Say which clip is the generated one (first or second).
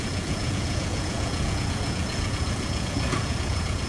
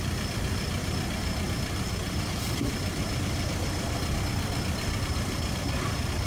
first